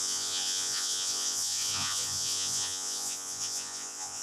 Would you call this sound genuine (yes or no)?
no